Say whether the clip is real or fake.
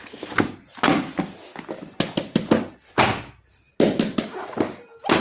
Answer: real